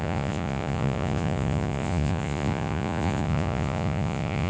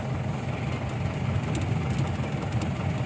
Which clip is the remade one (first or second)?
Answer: first